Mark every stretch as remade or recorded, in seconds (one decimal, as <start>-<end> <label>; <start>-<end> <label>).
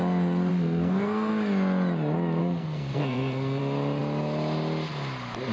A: 0.0-0.5 recorded; 0.5-1.3 remade; 1.3-2.4 recorded; 2.4-3.6 remade; 3.6-5.5 recorded